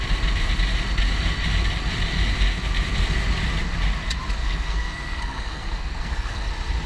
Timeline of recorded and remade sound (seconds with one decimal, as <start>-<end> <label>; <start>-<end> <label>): 0.0-4.4 recorded; 4.4-6.5 remade; 6.5-6.9 recorded